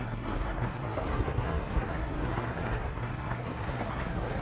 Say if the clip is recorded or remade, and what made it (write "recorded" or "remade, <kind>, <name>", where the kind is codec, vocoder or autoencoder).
remade, codec, SNAC